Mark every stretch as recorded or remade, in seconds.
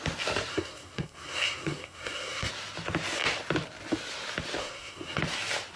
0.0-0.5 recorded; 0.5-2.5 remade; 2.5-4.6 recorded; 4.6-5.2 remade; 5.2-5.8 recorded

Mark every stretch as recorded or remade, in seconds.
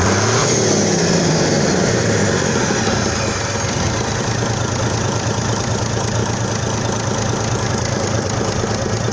0.0-2.2 remade; 2.2-4.2 recorded; 4.2-6.2 remade; 6.2-7.7 recorded; 7.7-9.1 remade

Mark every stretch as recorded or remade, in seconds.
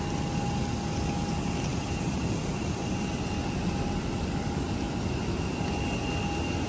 0.0-1.7 recorded; 1.7-3.6 remade; 3.6-6.7 recorded